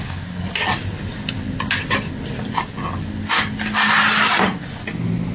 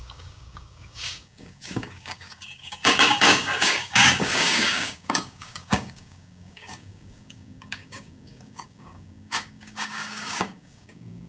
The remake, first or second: second